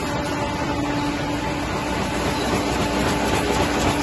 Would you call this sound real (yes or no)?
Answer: yes